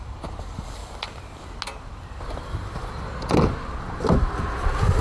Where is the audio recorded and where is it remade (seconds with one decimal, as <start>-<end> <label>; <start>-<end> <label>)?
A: 0.0-0.8 remade; 0.8-1.9 recorded; 1.9-2.8 remade; 2.8-3.8 recorded; 3.8-5.0 remade